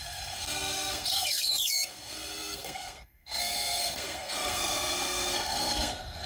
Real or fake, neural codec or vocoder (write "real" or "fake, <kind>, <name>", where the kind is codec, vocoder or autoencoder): fake, codec, SNAC